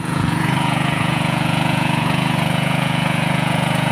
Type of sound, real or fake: fake